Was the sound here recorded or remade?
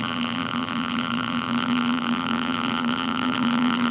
remade